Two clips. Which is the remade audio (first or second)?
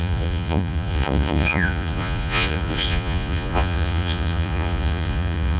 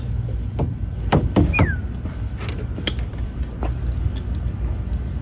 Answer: first